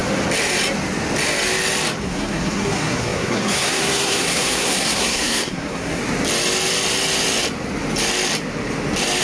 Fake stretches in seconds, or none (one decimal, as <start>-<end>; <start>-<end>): 2.0-6.0